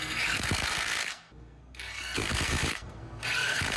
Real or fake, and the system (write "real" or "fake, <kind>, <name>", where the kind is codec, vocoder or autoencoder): fake, codec, SNAC